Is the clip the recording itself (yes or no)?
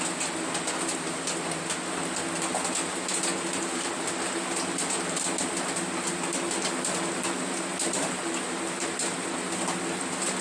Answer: yes